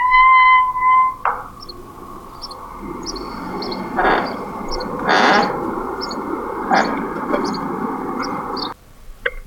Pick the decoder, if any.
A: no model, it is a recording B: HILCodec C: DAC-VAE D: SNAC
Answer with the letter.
A